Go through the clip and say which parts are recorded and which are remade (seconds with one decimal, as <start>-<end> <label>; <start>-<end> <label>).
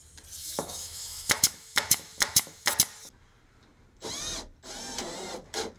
0.0-0.4 recorded; 0.4-2.7 remade; 2.7-5.8 recorded